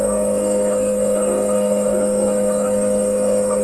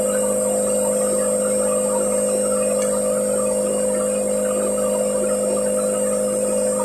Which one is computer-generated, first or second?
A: first